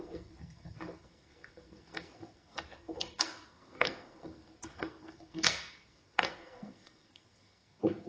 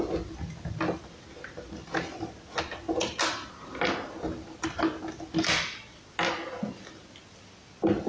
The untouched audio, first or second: second